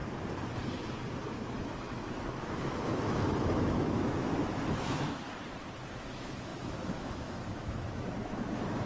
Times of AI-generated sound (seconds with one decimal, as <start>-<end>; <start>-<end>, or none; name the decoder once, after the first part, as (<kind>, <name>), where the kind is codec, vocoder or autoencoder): 1.6-5.4 (autoencoder, DAC-VAE); 6.1-8.9